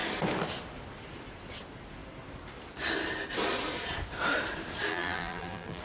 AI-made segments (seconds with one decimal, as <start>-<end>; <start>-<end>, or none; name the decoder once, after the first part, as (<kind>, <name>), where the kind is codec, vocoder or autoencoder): 4.9-5.8 (vocoder, BigVGAN v2)